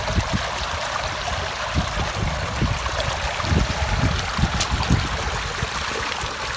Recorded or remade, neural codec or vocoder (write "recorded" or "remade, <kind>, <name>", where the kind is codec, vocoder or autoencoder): recorded